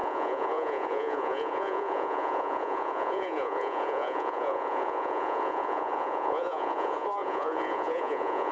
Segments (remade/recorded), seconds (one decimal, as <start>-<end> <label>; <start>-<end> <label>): 0.0-8.5 remade